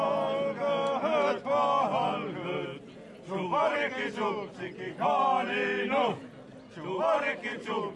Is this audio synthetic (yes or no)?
no